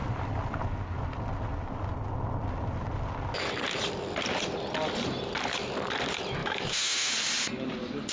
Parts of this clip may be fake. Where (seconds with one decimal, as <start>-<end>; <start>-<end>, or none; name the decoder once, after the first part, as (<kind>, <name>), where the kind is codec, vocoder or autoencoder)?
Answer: 6.4-7.1 (autoencoder, DAC-VAE)